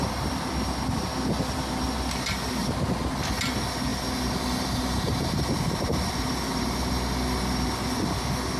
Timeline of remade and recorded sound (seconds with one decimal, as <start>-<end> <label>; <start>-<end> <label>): 0.0-2.6 recorded; 2.6-3.2 remade; 3.2-3.9 recorded; 3.9-6.8 remade; 6.8-8.6 recorded